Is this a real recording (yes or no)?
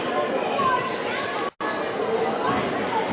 yes